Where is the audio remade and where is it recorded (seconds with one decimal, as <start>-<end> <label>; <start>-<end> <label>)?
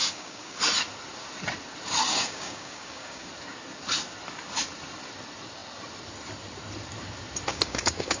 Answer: 0.0-0.6 remade; 0.6-2.1 recorded; 2.1-3.3 remade; 3.3-7.5 recorded; 7.5-8.2 remade